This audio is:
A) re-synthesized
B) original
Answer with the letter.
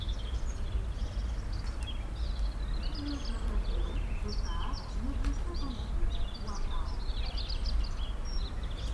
B